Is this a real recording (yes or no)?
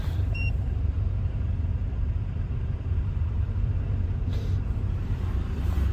no